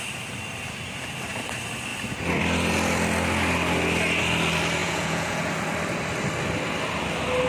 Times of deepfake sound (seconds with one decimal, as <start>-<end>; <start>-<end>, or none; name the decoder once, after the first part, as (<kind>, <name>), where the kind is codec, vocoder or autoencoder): 4.8-5.5 (vocoder, Vocos)